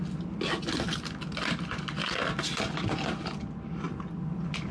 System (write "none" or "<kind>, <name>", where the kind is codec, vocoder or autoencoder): none